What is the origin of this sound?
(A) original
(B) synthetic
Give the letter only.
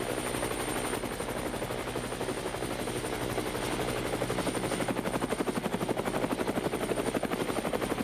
A